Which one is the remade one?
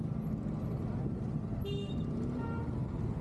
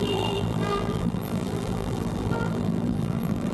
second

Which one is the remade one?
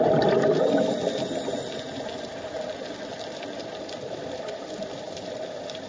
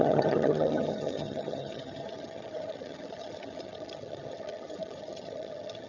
second